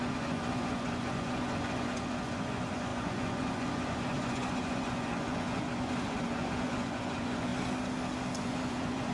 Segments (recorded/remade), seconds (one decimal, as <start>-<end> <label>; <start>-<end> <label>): 0.0-7.5 remade; 7.5-8.4 recorded; 8.4-9.1 remade